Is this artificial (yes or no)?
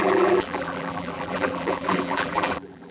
yes